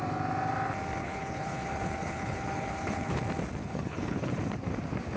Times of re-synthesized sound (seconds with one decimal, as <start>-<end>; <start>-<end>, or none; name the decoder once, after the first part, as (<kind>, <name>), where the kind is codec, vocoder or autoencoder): 1.0-3.2 (codec, HILCodec); 3.6-4.3